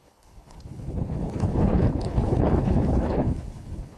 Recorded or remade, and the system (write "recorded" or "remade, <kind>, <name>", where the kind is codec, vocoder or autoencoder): remade, codec, HILCodec